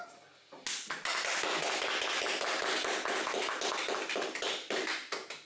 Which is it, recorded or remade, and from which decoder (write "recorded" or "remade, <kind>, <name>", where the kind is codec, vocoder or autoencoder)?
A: recorded